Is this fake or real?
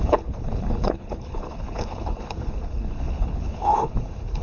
fake